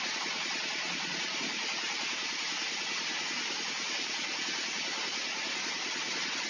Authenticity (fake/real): real